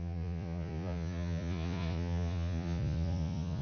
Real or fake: fake